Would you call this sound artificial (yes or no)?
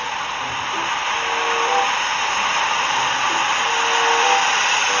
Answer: no